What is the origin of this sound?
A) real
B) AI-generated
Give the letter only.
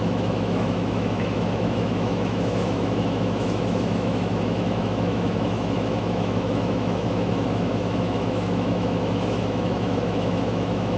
B